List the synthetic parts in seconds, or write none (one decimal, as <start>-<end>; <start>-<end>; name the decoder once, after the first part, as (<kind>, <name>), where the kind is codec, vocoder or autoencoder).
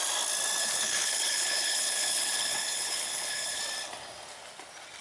0.6-3.6 (codec, HILCodec)